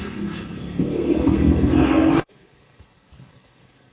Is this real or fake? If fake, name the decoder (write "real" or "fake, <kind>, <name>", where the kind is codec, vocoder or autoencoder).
fake, codec, SNAC